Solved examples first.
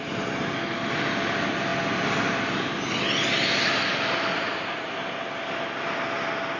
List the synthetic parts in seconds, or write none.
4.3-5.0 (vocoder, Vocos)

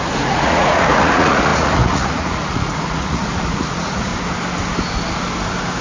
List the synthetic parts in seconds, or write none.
0.0-4.1 (vocoder, Vocos)

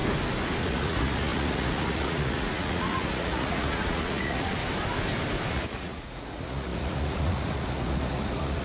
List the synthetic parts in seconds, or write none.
0.6-4.6 (vocoder, Vocos); 5.5-8.6

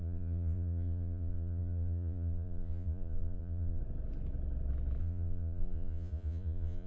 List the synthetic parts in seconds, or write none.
0.0-3.8 (vocoder, Vocos); 5.0-6.9

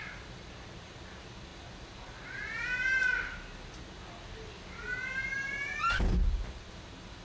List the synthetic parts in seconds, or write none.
none

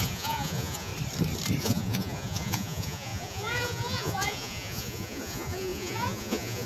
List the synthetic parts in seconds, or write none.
0.0-0.9 (vocoder, Vocos); 1.6-6.7